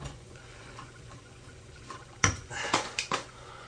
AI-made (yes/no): yes